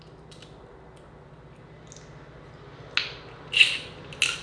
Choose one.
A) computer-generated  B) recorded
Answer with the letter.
B